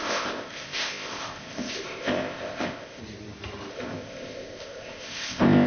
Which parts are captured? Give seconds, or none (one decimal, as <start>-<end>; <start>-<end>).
3.0-3.7